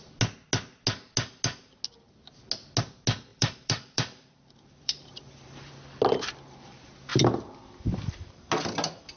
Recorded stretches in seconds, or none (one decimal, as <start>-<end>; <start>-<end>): 0.0-3.3; 5.7-7.1; 8.5-9.2